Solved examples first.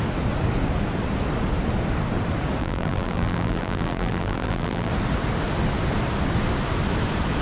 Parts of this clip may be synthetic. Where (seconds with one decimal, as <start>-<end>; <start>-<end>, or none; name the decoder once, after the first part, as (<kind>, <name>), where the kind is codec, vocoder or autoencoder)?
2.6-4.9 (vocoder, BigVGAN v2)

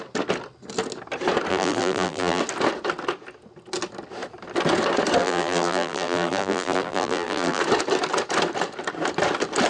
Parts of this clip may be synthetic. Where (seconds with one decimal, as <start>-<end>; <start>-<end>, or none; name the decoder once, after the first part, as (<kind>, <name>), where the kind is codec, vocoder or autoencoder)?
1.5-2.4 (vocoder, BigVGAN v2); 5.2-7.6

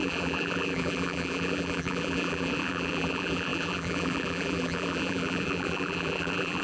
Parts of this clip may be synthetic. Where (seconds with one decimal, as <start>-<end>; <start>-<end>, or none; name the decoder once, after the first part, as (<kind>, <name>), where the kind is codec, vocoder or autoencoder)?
0.0-6.6 (vocoder, BigVGAN v2)